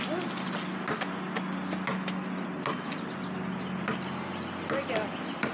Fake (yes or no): no